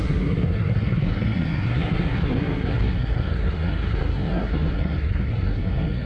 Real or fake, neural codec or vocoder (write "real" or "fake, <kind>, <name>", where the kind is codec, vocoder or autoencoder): fake, codec, SNAC